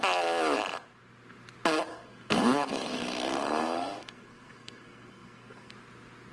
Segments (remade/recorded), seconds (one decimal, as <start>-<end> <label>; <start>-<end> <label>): 0.0-1.9 recorded; 1.9-5.7 remade; 5.7-6.3 recorded